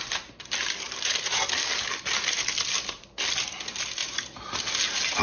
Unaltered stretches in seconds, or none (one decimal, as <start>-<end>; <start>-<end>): 0.0-5.2